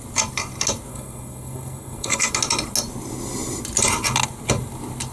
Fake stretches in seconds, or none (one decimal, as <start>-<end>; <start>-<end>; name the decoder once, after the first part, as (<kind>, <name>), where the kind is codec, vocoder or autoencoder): 0.9-2.3 (codec, SNAC)